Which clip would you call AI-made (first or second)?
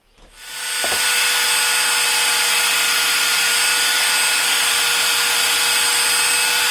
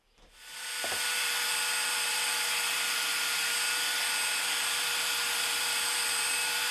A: second